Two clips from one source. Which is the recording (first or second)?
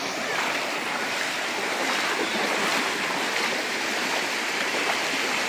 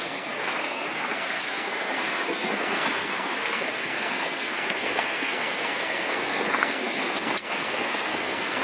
first